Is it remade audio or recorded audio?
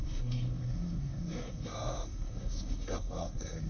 remade